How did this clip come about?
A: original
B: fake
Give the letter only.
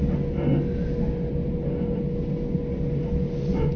A